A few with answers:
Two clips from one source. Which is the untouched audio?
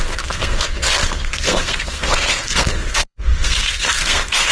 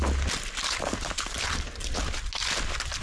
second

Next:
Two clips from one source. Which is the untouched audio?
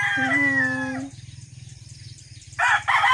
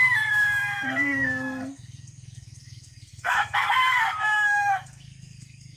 first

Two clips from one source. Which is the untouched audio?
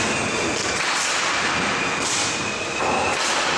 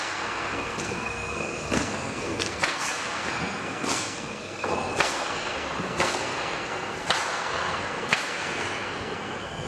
first